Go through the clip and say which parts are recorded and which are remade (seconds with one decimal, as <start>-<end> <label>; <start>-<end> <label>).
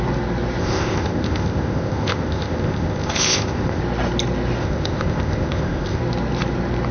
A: 0.0-0.6 recorded; 0.6-3.8 remade; 3.8-4.6 recorded; 4.6-6.0 remade; 6.0-6.9 recorded